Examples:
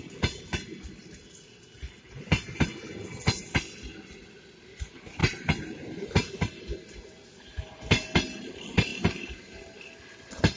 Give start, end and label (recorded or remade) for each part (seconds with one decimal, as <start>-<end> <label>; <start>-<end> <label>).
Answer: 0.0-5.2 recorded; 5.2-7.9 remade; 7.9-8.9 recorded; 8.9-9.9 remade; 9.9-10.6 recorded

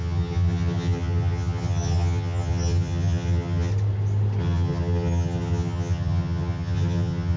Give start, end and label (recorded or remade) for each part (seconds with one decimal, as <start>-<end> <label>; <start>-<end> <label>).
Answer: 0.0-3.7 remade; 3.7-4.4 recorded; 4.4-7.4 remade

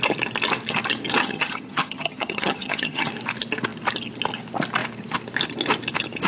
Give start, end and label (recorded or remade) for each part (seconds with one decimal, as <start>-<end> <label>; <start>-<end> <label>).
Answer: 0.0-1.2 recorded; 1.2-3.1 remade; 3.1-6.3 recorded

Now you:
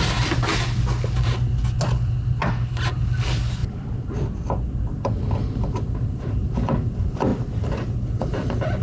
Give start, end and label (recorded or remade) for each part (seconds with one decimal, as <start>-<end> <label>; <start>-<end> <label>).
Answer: 0.0-8.8 recorded

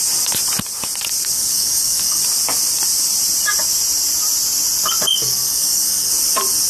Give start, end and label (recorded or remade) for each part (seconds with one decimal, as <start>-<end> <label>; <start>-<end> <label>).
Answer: 0.0-1.3 recorded; 1.3-2.2 remade; 2.2-5.1 recorded; 5.1-6.1 remade; 6.1-6.7 recorded

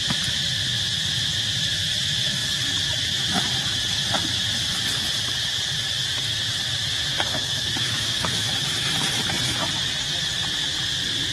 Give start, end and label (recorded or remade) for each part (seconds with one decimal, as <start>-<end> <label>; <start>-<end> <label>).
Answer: 0.0-7.3 recorded; 7.3-8.5 remade; 8.5-11.3 recorded

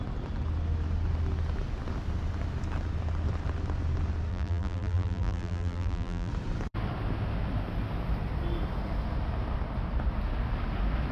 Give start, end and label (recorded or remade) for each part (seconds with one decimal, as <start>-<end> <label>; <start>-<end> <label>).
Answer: 0.0-4.3 recorded; 4.3-6.3 remade; 6.3-11.1 recorded